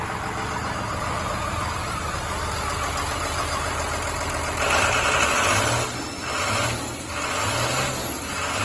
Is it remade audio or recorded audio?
recorded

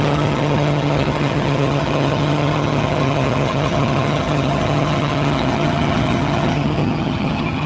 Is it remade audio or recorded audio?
remade